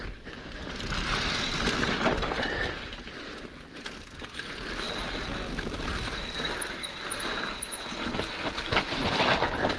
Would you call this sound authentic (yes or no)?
yes